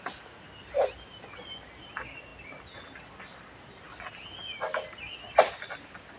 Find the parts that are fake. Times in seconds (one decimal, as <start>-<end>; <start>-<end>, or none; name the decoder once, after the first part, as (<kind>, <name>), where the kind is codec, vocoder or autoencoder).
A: none